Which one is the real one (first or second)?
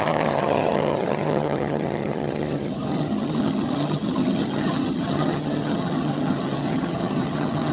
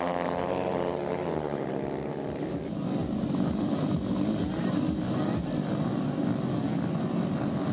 second